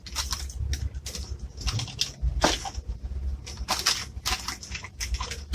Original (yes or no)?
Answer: yes